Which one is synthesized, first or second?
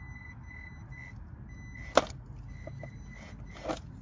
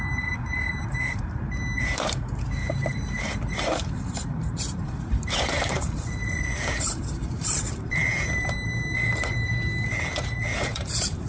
second